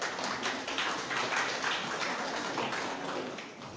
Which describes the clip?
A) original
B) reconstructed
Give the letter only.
A